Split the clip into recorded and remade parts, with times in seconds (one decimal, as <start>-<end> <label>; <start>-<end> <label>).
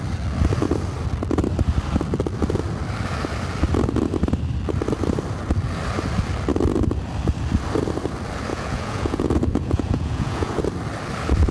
0.0-8.5 recorded; 8.5-10.6 remade; 10.6-11.5 recorded